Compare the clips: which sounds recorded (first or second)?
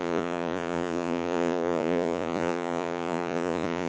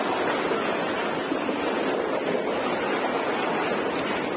second